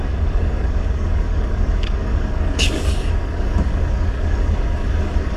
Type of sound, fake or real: fake